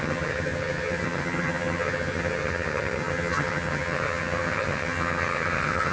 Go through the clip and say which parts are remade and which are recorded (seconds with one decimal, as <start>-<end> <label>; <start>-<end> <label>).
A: 0.0-5.9 remade